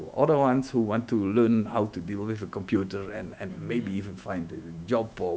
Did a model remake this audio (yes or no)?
yes